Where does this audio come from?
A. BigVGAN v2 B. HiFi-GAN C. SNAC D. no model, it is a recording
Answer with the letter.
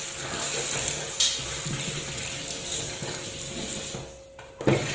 D